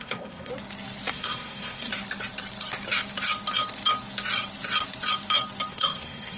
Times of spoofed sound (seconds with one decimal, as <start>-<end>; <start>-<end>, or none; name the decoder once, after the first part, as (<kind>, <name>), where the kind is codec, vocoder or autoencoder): 0.0-0.5 (codec, SNAC); 1.1-1.9; 5.7-6.4